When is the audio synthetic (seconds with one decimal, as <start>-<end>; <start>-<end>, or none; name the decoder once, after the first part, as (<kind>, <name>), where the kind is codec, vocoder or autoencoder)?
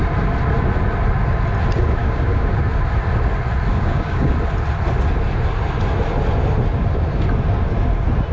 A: 2.0-2.6 (codec, DAC); 3.7-4.3